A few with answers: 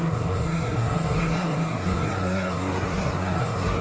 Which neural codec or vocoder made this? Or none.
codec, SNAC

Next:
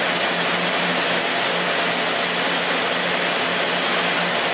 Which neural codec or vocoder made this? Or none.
none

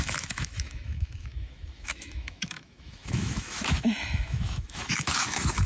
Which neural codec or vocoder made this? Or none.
autoencoder, DAC-VAE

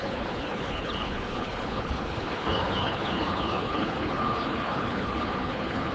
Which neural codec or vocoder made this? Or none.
codec, HILCodec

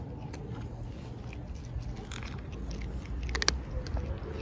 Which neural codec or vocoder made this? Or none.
none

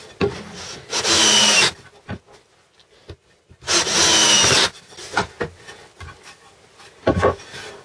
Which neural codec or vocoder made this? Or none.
none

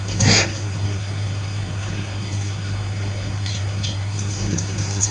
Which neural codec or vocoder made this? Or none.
codec, SNAC